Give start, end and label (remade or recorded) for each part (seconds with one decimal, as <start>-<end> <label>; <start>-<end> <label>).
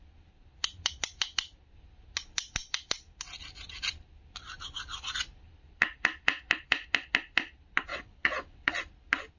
0.0-7.9 recorded; 7.9-8.7 remade; 8.7-9.4 recorded